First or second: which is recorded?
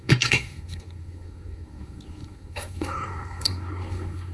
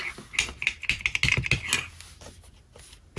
second